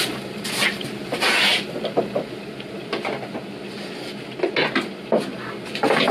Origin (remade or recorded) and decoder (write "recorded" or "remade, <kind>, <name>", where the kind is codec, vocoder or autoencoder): recorded